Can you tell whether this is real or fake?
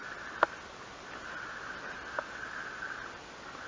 real